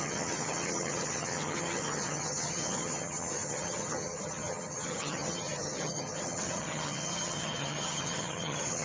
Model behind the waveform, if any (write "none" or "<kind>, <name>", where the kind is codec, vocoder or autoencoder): vocoder, HiFi-GAN